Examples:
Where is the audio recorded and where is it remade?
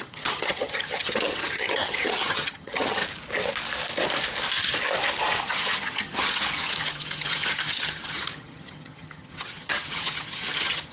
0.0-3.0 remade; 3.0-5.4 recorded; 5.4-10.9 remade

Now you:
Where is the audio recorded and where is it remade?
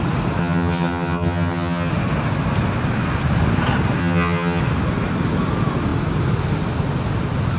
0.0-0.4 recorded; 0.4-1.9 remade; 1.9-4.0 recorded; 4.0-4.6 remade; 4.6-7.6 recorded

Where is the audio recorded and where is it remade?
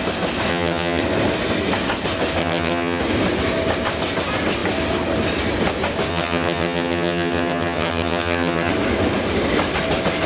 0.0-0.5 recorded; 0.5-1.0 remade; 1.0-2.4 recorded; 2.4-3.0 remade; 3.0-6.1 recorded; 6.1-8.7 remade; 8.7-10.3 recorded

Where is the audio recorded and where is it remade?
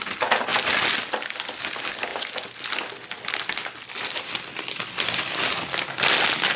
0.0-6.6 recorded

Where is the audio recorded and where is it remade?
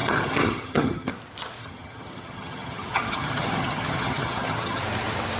0.0-1.1 remade; 1.1-1.6 recorded; 1.6-4.8 remade; 4.8-5.4 recorded